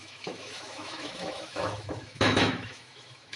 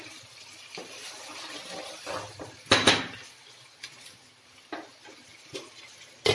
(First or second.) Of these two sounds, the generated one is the first